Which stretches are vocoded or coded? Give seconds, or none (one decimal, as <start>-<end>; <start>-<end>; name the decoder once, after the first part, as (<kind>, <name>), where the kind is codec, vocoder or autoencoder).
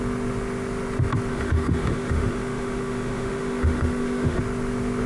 1.3-4.4 (autoencoder, DAC-VAE)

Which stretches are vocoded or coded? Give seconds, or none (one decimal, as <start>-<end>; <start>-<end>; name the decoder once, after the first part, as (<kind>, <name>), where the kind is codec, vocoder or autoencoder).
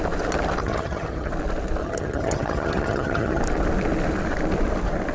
0.6-1.3 (vocoder, HiFi-GAN); 1.8-3.4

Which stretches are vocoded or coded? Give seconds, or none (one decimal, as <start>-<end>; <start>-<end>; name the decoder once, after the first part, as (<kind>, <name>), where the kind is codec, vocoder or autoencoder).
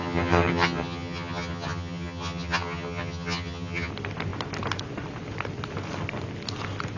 0.0-3.9 (vocoder, HiFi-GAN)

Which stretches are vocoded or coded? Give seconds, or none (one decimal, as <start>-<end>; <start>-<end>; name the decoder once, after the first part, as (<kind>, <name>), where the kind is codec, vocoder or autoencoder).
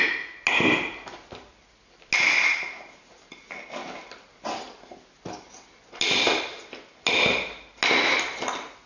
none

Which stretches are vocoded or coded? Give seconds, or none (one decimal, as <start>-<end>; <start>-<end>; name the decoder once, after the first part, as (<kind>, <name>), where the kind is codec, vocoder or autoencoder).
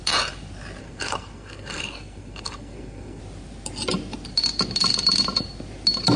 0.8-3.2 (codec, SNAC)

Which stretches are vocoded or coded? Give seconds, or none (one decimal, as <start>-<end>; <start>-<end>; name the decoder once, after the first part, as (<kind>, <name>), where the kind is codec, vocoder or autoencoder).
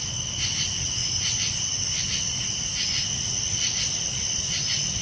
none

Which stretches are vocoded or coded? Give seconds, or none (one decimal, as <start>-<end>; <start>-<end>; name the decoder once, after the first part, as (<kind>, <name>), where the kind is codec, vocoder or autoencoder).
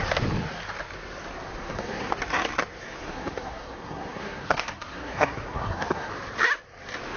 1.6-2.1 (codec, SNAC); 2.8-6.1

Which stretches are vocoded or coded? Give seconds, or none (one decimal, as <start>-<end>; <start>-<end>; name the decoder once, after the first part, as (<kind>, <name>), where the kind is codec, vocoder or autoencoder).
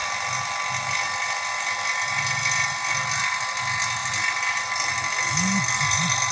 2.8-3.4 (vocoder, BigVGAN v2); 4.0-4.9